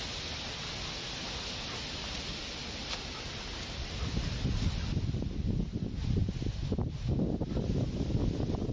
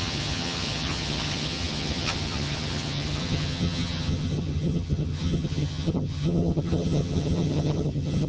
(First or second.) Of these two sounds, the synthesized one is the second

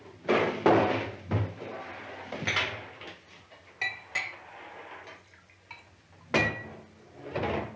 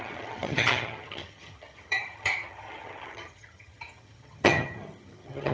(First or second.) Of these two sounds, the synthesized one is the second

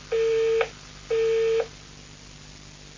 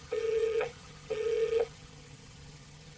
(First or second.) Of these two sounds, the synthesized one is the second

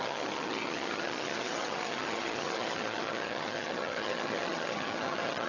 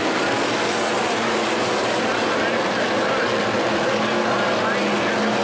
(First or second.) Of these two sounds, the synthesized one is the first